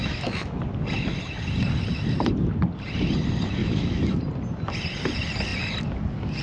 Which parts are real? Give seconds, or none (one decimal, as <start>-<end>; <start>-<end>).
0.6-3.6; 4.2-6.4